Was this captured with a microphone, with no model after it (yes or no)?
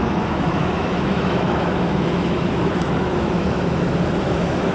no